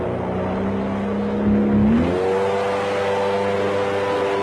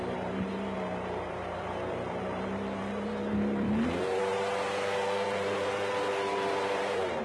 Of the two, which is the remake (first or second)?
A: second